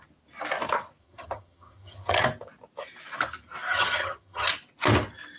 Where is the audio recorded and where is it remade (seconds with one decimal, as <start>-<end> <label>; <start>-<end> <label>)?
0.0-1.0 recorded; 1.0-2.2 remade; 2.2-3.7 recorded; 3.7-4.5 remade; 4.5-5.4 recorded